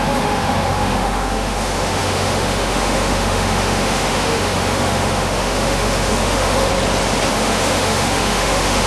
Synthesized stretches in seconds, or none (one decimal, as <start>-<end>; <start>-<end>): 0.0-6.7; 7.3-8.9